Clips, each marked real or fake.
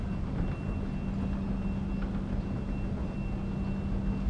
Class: real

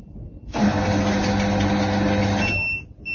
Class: real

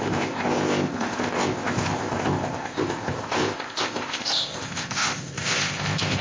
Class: fake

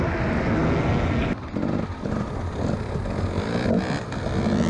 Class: real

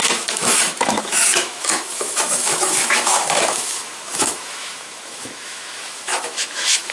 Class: fake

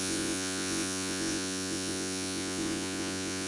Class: fake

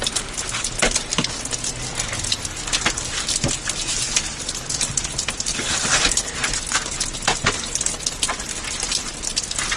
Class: fake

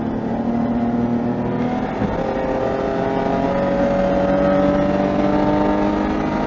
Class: real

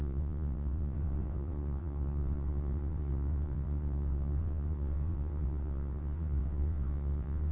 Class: fake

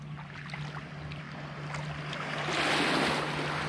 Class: real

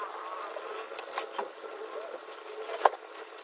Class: real